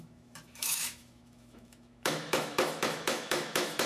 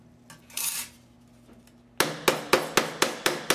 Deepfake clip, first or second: first